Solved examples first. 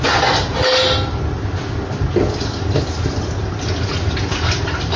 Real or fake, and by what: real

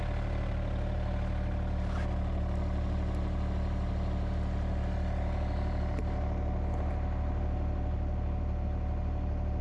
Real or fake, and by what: real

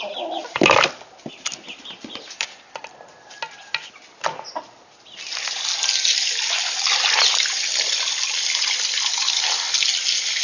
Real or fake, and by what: real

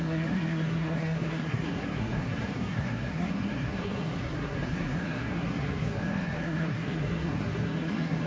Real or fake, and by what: fake, codec, SNAC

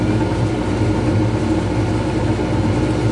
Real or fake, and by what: real